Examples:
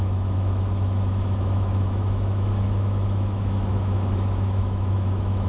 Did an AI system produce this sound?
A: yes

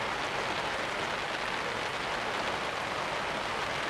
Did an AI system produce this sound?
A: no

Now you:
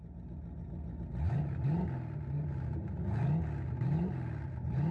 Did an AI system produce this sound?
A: no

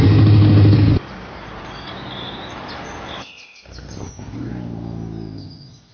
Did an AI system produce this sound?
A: no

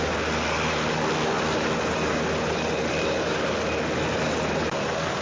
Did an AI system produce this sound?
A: no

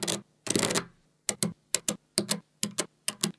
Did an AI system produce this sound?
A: no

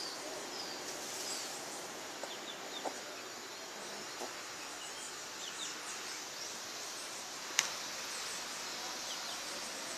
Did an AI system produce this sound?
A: no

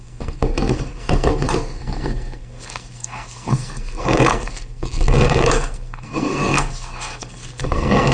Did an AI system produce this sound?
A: yes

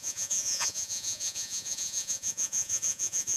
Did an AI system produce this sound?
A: yes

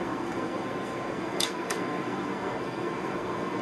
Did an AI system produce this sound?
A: yes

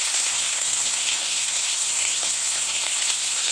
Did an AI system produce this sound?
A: yes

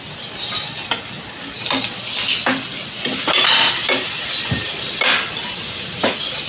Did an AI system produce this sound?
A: no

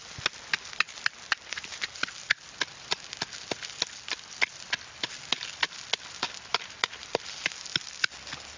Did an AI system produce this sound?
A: no